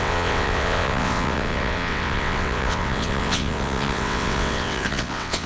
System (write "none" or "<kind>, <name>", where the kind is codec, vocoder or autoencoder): vocoder, WaveNeXt